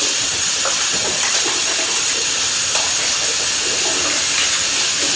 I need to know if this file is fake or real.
real